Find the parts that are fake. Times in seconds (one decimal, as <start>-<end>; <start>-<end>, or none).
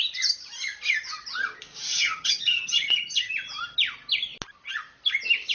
1.9-3.3